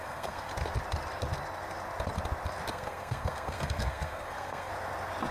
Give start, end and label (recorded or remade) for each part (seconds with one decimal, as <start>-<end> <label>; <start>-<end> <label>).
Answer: 0.0-0.5 remade; 0.5-2.7 recorded; 2.7-4.7 remade; 4.7-5.3 recorded